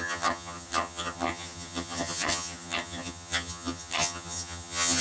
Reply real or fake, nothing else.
fake